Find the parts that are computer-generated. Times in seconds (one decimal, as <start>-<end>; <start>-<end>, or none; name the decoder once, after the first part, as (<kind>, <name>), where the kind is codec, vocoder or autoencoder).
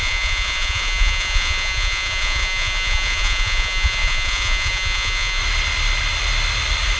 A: 0.0-5.4 (vocoder, Vocos)